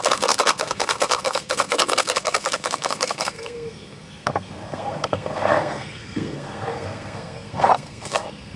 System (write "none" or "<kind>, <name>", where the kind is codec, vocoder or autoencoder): codec, SNAC